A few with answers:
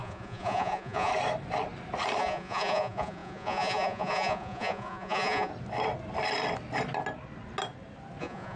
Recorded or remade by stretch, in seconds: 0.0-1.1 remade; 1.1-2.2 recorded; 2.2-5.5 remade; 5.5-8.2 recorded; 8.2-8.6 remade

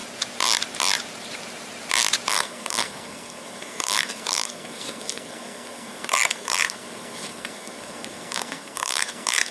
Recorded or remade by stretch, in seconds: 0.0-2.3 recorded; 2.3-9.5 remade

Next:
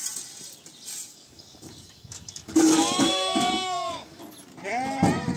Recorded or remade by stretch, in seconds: 0.0-1.1 recorded; 1.1-4.2 remade; 4.2-5.4 recorded

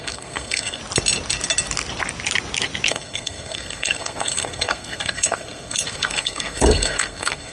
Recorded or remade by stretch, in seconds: 0.0-0.8 remade; 0.8-2.9 recorded; 2.9-7.5 remade

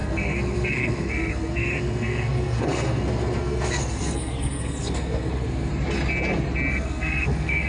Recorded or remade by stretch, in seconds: 0.0-5.7 remade; 5.7-6.7 recorded; 6.7-7.7 remade

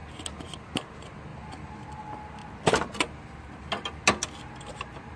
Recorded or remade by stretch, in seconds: 0.0-5.2 recorded

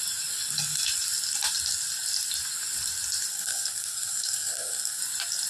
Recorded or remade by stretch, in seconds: 0.0-3.3 recorded; 3.3-5.0 remade; 5.0-5.5 recorded

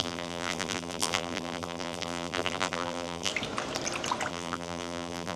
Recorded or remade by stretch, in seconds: 0.0-3.3 remade; 3.3-4.3 recorded; 4.3-5.4 remade